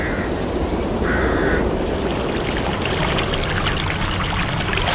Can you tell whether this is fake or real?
real